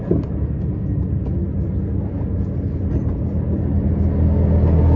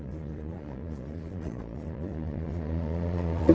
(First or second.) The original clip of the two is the first